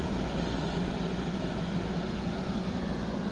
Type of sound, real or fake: fake